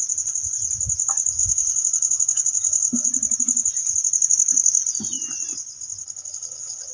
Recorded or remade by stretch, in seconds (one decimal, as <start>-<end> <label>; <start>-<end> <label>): 0.0-1.4 recorded; 1.4-3.1 remade; 3.1-6.0 recorded; 6.0-6.9 remade